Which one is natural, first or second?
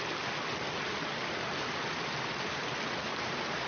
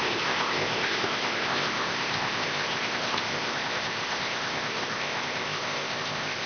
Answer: first